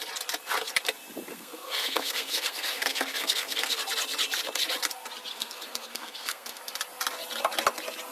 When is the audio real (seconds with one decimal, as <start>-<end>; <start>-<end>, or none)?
0.0-1.3; 3.8-5.3; 6.6-8.1